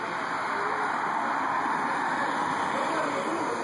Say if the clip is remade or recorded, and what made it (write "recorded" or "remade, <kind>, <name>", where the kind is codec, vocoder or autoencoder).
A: recorded